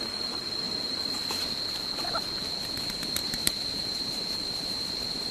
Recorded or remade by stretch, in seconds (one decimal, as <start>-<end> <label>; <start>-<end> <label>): 0.0-3.2 recorded; 3.2-5.3 remade